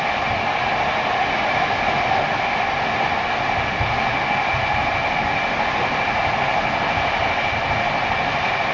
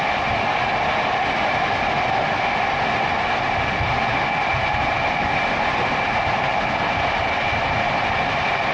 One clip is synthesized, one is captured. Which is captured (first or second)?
first